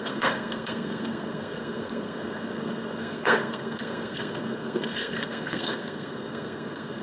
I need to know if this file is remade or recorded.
remade